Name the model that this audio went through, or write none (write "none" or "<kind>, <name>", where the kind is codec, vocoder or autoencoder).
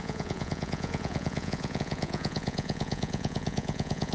vocoder, Vocos